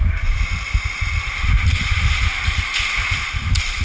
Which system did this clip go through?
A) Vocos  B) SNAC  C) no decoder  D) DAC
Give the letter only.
C